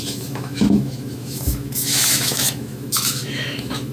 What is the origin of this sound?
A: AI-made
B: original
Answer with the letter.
A